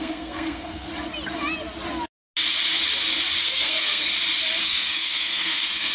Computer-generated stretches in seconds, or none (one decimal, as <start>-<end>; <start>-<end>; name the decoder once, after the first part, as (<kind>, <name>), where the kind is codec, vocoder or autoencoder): 0.0-0.9 (codec, SNAC); 3.4-4.1; 4.6-5.9